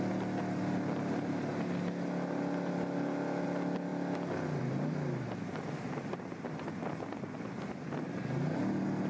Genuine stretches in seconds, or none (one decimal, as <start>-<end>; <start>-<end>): 0.0-9.1